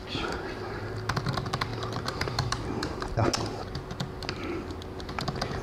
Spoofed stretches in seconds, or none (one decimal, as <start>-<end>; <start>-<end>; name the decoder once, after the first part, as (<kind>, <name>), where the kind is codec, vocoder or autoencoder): none